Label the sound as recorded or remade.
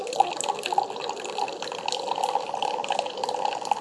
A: recorded